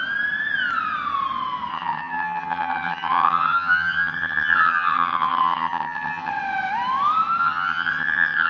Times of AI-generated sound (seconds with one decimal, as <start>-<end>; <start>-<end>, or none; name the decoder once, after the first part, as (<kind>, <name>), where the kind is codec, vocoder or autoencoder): 1.7-6.3 (vocoder, HiFi-GAN); 7.4-8.5